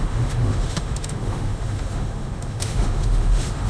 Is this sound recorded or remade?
remade